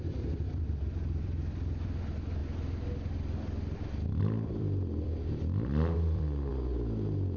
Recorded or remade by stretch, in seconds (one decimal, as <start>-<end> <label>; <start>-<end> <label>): 0.0-2.4 remade; 2.4-4.2 recorded; 4.2-6.5 remade; 6.5-7.4 recorded